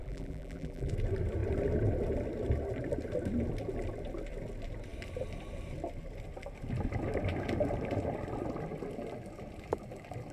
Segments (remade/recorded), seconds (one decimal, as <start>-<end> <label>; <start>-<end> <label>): 0.0-0.9 remade; 0.9-10.3 recorded